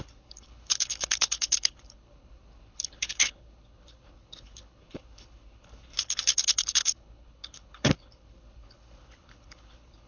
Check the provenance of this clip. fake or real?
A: fake